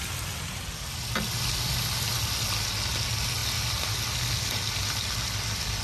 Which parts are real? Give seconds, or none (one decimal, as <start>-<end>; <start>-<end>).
0.0-5.8